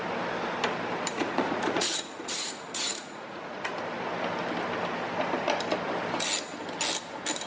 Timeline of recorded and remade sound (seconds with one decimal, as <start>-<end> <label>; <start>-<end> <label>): 0.0-1.1 recorded; 1.1-3.7 remade; 3.7-7.5 recorded